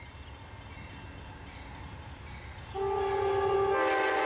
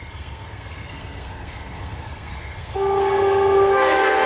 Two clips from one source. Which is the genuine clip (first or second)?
first